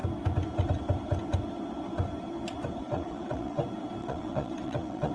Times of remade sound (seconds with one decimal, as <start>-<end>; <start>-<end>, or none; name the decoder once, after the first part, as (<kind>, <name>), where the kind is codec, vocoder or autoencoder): 2.8-3.6 (vocoder, WaveNeXt); 4.0-5.1